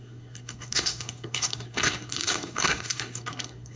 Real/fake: fake